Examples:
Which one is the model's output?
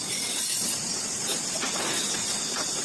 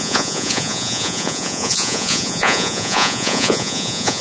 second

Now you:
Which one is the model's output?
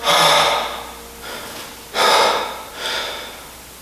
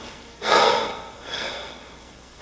second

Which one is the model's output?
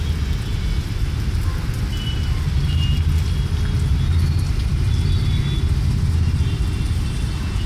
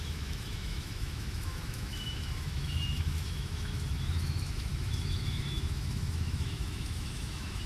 second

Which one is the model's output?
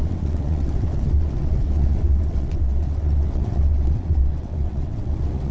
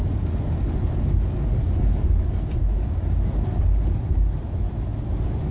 first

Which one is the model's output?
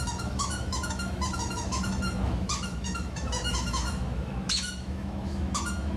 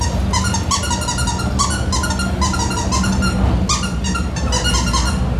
first